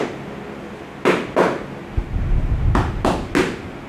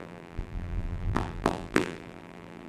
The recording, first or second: first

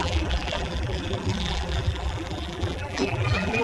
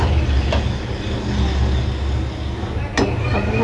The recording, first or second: second